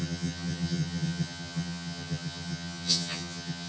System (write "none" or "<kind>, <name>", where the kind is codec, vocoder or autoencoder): vocoder, HiFi-GAN